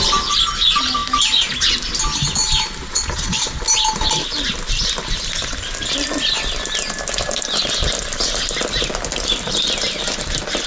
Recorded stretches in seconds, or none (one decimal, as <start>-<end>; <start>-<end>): 0.0-2.8; 3.6-10.7